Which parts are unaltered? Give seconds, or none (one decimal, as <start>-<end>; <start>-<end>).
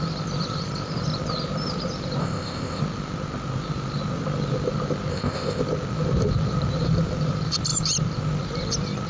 0.0-2.2; 2.8-5.1; 5.6-9.1